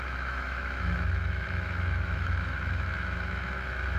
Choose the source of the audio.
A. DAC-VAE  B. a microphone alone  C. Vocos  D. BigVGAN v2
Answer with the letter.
A